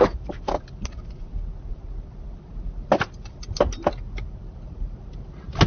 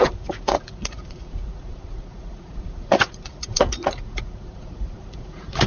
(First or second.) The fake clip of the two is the second